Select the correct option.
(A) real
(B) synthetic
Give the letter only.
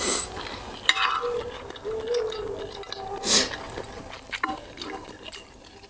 A